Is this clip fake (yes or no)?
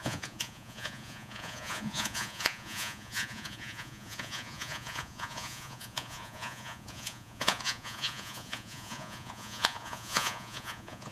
yes